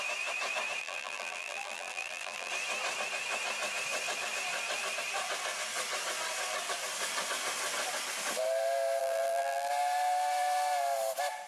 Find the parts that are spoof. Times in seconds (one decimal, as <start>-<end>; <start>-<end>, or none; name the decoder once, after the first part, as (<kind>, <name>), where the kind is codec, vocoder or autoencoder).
0.8-2.5 (vocoder, BigVGAN v2); 9.0-9.7